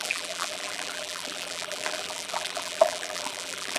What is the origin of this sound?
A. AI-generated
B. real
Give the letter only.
A